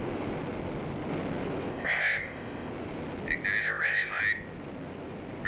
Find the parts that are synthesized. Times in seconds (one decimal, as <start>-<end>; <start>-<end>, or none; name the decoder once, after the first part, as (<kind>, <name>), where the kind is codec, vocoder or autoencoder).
1.7-2.7 (codec, ZipCodec); 3.6-4.2

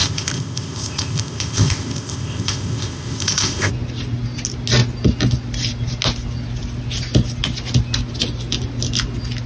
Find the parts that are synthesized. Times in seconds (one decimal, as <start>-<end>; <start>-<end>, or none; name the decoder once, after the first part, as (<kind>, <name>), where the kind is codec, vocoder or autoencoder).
0.0-3.7 (codec, ZipCodec)